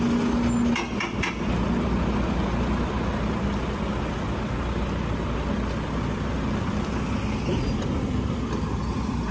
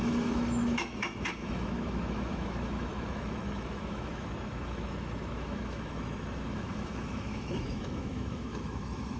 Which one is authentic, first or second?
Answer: first